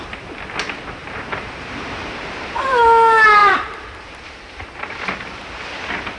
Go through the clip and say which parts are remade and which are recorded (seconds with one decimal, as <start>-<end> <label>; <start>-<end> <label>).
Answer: 0.0-1.0 recorded; 1.0-2.8 remade; 2.8-3.4 recorded; 3.4-5.0 remade; 5.0-6.2 recorded

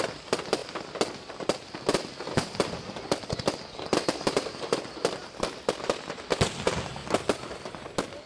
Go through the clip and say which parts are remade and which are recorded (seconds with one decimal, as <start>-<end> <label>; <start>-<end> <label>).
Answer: 0.0-8.3 recorded

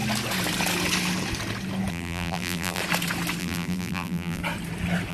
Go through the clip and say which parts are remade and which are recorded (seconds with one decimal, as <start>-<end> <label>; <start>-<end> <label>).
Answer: 0.0-1.9 recorded; 1.9-2.8 remade; 2.8-3.4 recorded; 3.4-4.4 remade; 4.4-5.1 recorded

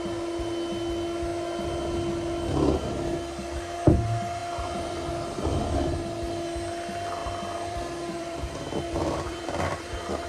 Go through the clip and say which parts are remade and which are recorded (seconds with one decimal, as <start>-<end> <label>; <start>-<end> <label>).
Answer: 0.0-4.4 recorded; 4.4-5.1 remade; 5.1-7.2 recorded; 7.2-10.3 remade

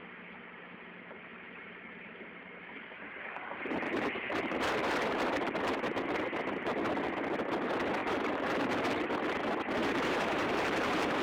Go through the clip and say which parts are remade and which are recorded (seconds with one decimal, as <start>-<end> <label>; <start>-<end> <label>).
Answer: 0.0-1.3 recorded; 1.3-5.8 remade; 5.8-8.0 recorded; 8.0-8.7 remade; 8.7-9.8 recorded; 9.8-11.2 remade

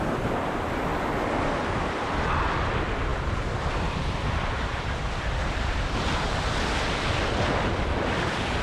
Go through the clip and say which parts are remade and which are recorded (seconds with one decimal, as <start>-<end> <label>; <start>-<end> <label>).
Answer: 0.0-0.9 remade; 0.9-1.4 recorded; 1.4-8.6 remade

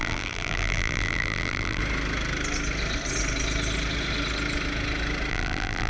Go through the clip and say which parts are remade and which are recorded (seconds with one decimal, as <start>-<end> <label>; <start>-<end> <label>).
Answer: 0.0-1.8 remade; 1.8-5.3 recorded; 5.3-5.9 remade

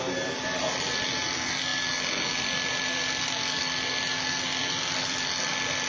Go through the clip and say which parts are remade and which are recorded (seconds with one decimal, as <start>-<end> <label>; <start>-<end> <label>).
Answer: 0.0-5.9 recorded